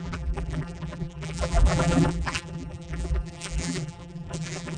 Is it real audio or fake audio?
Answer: fake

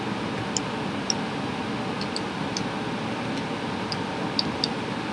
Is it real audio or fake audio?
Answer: real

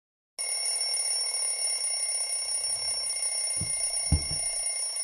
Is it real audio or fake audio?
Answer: real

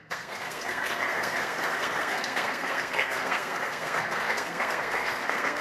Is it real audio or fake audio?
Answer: fake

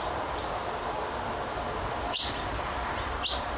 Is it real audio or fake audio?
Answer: fake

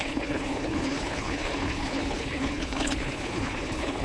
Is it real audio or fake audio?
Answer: fake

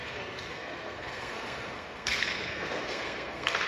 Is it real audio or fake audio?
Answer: fake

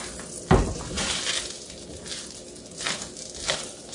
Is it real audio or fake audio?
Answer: real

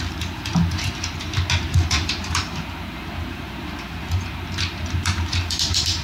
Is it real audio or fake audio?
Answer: fake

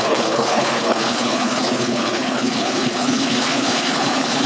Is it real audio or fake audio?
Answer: fake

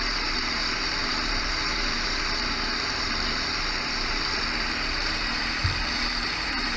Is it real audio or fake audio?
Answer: fake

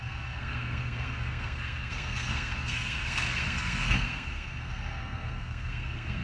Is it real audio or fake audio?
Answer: fake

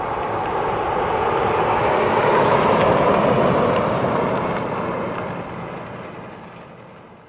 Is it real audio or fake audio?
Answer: real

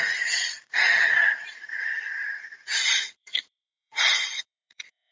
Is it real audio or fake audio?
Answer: fake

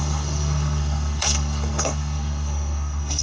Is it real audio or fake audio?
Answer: fake